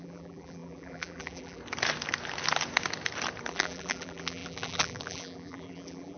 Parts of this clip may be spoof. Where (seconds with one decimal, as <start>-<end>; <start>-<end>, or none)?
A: 0.0-1.6; 3.5-6.2